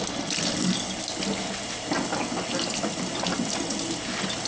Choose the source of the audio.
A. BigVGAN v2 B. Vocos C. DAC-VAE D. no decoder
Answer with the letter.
D